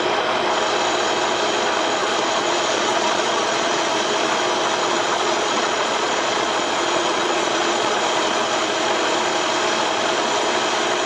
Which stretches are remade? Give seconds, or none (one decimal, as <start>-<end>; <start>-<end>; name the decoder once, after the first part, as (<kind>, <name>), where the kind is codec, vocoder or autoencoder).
2.0-3.9 (vocoder, Vocos); 4.8-8.0